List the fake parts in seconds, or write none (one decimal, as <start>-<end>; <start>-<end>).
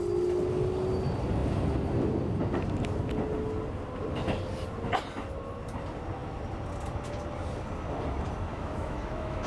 8.5-9.5